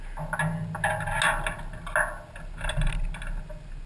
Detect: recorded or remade recorded